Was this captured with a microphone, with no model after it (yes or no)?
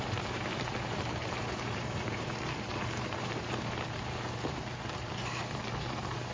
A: no